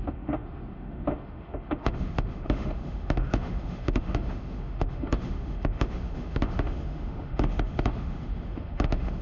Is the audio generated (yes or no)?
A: yes